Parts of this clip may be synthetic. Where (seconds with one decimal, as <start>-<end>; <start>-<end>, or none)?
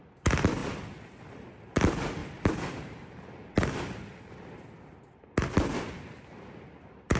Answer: 0.6-1.3; 2.2-4.5